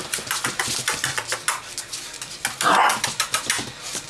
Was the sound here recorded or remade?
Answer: recorded